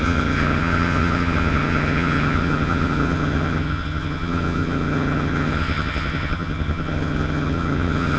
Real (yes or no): no